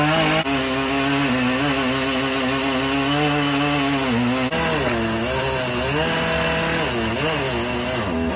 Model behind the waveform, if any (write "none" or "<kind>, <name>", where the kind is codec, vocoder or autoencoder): none